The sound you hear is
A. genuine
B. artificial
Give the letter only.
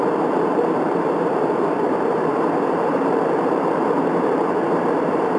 B